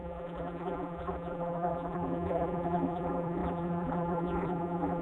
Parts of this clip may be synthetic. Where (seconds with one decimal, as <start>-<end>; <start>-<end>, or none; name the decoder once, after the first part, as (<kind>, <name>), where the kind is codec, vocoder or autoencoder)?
0.0-5.0 (vocoder, BigVGAN v2)